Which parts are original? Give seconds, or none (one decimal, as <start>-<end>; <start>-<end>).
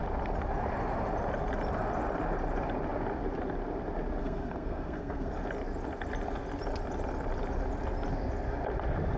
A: 0.0-4.2; 5.3-9.2